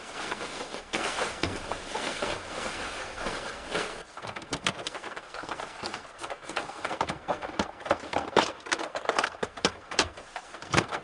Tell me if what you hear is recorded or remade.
remade